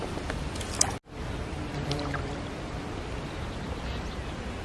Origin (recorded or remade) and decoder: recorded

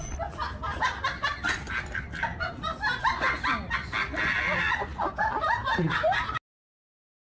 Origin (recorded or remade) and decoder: recorded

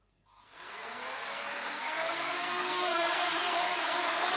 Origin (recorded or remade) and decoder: remade, codec, SNAC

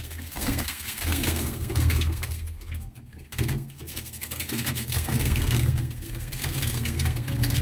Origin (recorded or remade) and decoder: remade, codec, SNAC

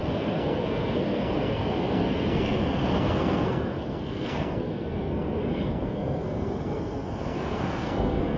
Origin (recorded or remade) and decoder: remade, codec, SNAC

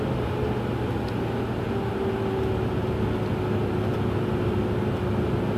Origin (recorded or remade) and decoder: recorded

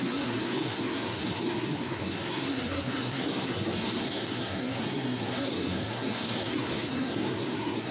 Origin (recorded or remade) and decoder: remade, codec, SNAC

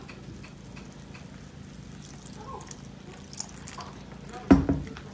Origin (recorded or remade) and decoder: recorded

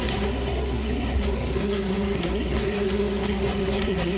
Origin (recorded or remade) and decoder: remade, codec, SNAC